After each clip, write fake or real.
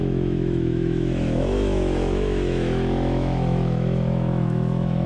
fake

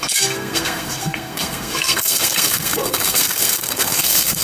fake